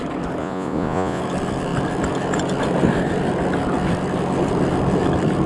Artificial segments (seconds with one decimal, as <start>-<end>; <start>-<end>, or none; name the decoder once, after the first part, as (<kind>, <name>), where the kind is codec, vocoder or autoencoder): 0.4-1.2 (vocoder, Vocos)

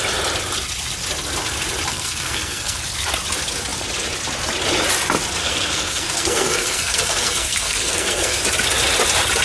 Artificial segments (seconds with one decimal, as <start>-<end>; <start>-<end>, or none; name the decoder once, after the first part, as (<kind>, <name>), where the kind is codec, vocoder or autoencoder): 1.9-2.8 (codec, SNAC); 5.4-8.4

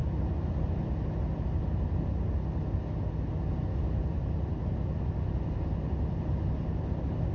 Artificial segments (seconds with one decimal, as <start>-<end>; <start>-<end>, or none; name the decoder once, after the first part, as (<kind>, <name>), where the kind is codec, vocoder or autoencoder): none

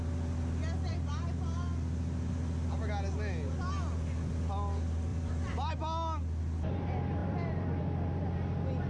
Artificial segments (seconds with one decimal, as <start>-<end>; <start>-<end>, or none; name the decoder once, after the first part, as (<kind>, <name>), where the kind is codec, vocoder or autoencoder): 0.9-2.3 (vocoder, BigVGAN v2); 5.1-5.7; 7.2-7.8

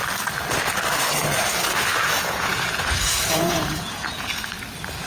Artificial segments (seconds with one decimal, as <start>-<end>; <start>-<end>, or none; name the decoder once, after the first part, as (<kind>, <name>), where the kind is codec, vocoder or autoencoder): 1.9-4.3 (vocoder, Vocos)

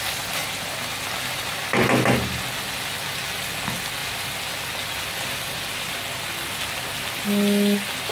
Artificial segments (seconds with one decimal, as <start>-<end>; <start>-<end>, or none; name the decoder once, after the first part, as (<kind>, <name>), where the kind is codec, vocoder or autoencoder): 0.4-1.2 (vocoder, BigVGAN v2); 4.0-6.3